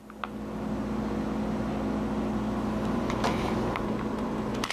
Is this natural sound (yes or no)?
yes